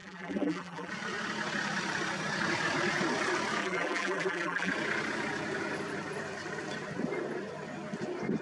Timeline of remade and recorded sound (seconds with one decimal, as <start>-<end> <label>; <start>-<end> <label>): 0.0-0.9 remade; 0.9-3.6 recorded; 3.6-4.7 remade; 4.7-8.4 recorded

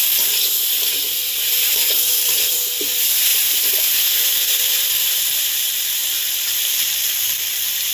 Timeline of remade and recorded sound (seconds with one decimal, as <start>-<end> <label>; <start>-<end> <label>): 0.0-7.9 recorded

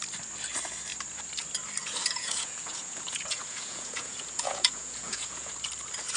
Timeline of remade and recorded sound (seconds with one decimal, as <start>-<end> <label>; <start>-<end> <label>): 0.0-1.8 recorded; 1.8-5.5 remade; 5.5-6.2 recorded

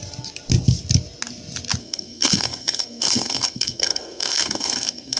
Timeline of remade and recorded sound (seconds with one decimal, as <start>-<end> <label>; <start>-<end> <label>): 0.0-1.8 recorded; 1.8-5.2 remade

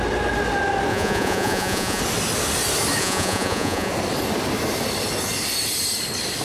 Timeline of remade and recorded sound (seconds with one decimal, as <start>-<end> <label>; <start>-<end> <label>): 0.0-0.9 recorded; 0.9-2.0 remade; 2.0-3.0 recorded; 3.0-3.9 remade; 3.9-6.4 recorded

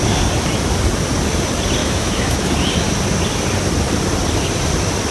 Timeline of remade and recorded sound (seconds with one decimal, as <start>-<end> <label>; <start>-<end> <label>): 0.0-1.8 recorded; 1.8-2.5 remade; 2.5-5.1 recorded

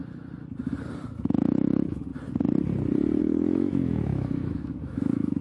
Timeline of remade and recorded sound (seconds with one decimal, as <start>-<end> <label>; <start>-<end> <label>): 0.0-1.2 recorded; 1.2-2.1 remade; 2.1-3.2 recorded; 3.2-5.4 remade